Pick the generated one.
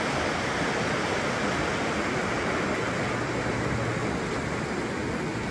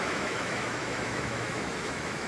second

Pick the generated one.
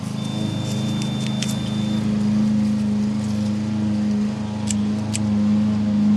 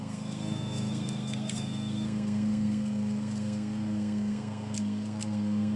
second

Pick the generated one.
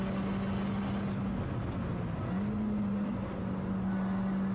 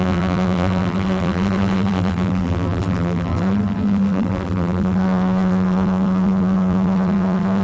second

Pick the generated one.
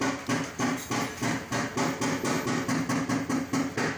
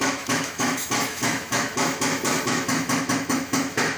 second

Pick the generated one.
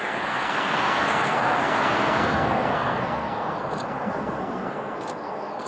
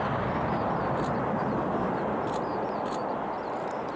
first